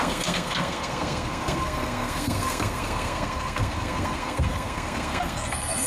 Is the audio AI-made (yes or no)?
yes